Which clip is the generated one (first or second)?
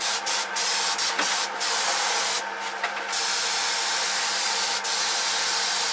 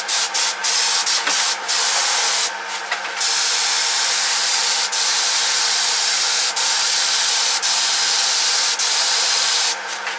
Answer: second